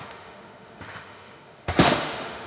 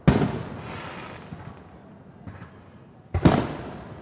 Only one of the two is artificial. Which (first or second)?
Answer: first